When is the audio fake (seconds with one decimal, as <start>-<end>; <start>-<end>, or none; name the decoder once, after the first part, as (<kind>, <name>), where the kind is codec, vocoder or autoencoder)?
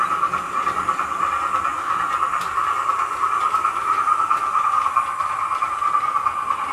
1.7-5.7 (vocoder, BigVGAN v2)